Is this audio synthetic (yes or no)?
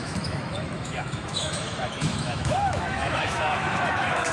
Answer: yes